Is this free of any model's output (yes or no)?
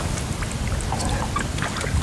yes